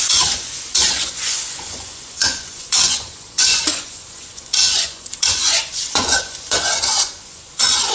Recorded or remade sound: remade